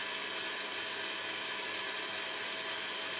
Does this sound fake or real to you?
real